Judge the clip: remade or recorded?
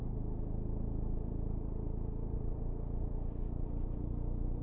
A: recorded